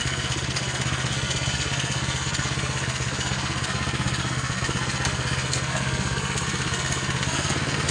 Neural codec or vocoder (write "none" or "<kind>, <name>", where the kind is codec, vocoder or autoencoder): codec, SNAC